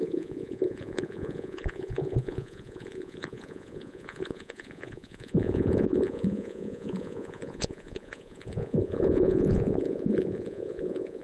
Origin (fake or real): fake